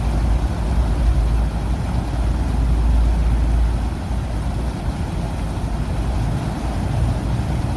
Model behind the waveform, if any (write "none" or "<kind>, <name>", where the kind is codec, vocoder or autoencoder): none